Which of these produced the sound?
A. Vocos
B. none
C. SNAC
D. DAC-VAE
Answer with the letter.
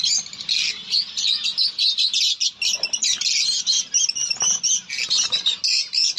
B